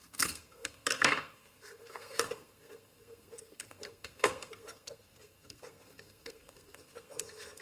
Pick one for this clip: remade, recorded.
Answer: remade